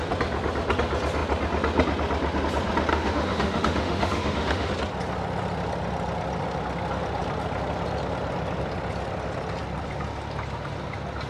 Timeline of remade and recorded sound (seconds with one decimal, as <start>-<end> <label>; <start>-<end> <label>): 0.0-2.9 recorded; 2.9-4.7 remade; 4.7-11.3 recorded